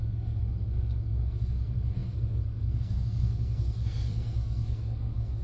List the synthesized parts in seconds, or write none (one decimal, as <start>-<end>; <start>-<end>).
0.0-5.4